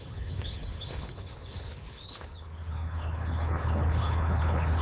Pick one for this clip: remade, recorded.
remade